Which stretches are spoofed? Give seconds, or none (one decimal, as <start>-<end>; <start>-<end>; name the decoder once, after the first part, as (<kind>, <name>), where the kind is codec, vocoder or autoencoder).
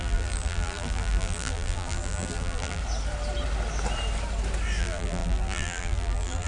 0.0-2.8 (vocoder, BigVGAN v2); 4.8-6.5